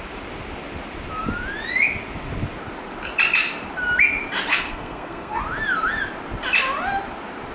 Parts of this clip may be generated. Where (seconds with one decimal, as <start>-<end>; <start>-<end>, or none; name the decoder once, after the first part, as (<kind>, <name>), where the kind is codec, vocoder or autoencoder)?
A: 4.5-5.4 (codec, SNAC)